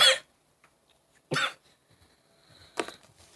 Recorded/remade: recorded